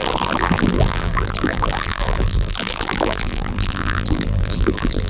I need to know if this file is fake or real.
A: fake